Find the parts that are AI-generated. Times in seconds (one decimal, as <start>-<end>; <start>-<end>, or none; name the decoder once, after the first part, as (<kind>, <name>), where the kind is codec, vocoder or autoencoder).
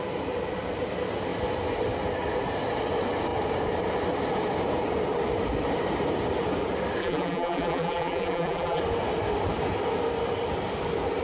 7.0-8.8 (vocoder, BigVGAN v2)